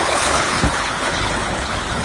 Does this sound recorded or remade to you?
remade